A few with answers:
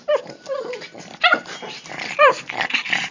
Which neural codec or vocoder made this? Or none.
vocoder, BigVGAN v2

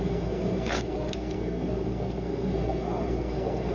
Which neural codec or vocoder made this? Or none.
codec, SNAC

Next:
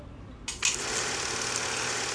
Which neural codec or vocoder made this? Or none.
none